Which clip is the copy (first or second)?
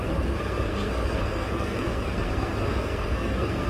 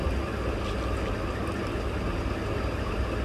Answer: first